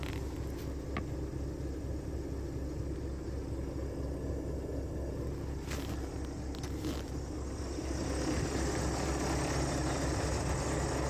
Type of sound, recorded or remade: recorded